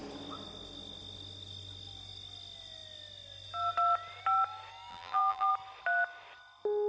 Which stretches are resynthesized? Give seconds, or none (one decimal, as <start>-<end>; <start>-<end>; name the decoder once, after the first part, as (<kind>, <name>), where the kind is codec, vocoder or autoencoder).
4.9-5.5 (vocoder, BigVGAN v2)